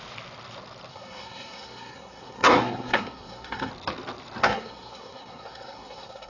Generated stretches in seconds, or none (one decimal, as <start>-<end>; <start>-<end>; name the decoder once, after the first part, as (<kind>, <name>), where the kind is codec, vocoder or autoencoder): 0.9-3.7 (codec, SNAC); 4.4-6.3